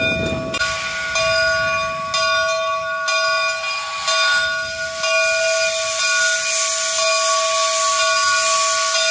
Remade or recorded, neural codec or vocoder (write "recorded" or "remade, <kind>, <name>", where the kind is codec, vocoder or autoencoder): recorded